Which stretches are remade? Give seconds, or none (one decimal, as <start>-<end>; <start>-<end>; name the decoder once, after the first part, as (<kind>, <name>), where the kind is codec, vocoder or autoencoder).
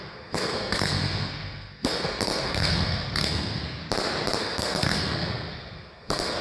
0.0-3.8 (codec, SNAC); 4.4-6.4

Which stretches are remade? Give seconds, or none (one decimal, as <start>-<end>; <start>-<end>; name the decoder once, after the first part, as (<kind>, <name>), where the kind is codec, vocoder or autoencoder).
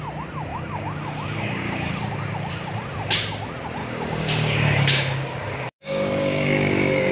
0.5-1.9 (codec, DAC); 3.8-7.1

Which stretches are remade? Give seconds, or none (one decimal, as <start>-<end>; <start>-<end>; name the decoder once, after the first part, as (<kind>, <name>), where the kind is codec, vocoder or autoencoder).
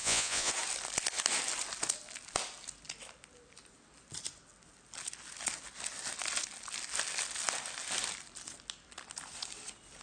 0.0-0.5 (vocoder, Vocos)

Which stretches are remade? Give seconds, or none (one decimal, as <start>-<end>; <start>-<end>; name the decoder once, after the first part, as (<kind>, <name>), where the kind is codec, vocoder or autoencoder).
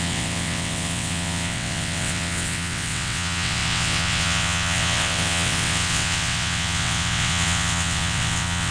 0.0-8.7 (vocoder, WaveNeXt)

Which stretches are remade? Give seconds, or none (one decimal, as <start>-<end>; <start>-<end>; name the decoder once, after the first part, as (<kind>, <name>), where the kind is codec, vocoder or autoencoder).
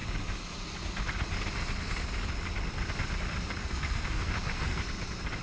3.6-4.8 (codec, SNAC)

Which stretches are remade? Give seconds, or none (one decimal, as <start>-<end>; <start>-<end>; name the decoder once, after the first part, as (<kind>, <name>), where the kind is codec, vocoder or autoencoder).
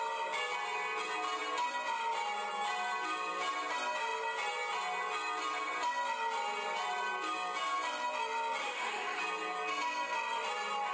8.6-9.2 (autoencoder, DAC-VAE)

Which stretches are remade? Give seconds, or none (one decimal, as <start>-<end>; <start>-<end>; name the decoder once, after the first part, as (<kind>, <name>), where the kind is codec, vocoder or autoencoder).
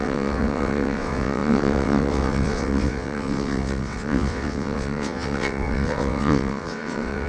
0.0-7.3 (vocoder, WaveNeXt)